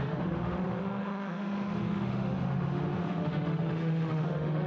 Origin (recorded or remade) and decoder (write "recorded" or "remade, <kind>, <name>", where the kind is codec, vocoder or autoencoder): remade, autoencoder, DAC-VAE